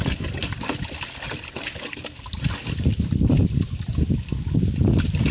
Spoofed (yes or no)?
no